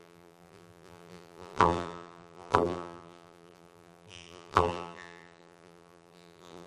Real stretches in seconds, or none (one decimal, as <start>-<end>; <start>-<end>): none